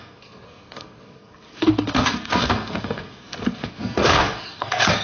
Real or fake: fake